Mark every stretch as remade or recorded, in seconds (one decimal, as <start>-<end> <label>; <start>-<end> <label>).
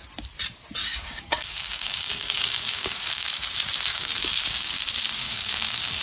0.0-0.8 recorded; 0.8-3.3 remade; 3.3-3.9 recorded; 3.9-4.8 remade; 4.8-5.2 recorded; 5.2-6.0 remade